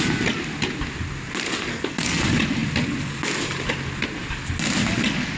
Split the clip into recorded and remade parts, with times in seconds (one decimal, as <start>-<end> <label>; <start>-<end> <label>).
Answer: 0.0-1.7 recorded; 1.7-2.2 remade; 2.2-5.4 recorded